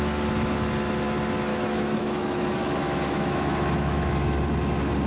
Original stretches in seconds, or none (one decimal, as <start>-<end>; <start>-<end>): 0.0-1.5; 4.1-5.1